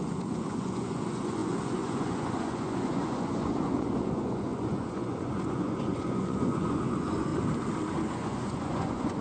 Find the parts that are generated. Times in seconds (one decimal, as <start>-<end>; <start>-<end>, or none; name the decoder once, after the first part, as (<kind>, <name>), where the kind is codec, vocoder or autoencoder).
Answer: 0.0-7.3 (vocoder, Vocos); 7.9-9.2